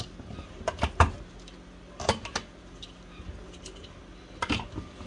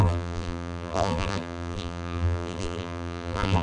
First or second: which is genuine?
first